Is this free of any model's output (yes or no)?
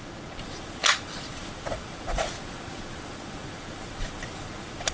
no